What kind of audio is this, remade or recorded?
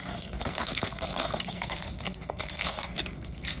remade